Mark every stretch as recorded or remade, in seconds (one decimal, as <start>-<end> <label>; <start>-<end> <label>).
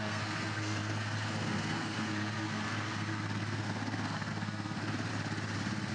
0.0-5.1 remade; 5.1-5.9 recorded